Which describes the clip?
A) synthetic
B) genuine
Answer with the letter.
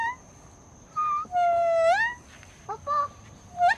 A